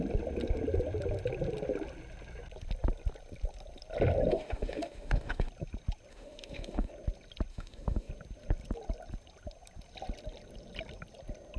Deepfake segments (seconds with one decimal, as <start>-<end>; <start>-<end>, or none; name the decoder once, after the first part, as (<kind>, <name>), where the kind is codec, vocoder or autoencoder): 4.3-5.5 (autoencoder, DAC-VAE); 6.1-6.9; 7.5-8.1